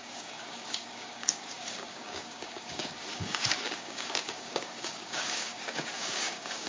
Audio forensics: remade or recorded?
remade